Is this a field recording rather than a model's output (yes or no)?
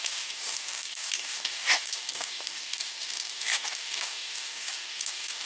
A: no